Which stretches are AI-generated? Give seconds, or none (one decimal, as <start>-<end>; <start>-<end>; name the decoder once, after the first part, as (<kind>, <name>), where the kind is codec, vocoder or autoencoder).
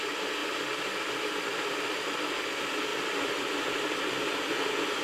0.4-2.0 (vocoder, BigVGAN v2); 2.9-5.0